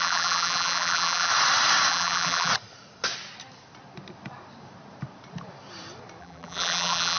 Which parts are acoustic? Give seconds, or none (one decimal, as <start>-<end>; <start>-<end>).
1.3-1.9; 2.5-6.2